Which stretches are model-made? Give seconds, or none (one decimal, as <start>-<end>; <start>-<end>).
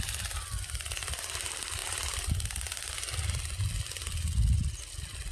none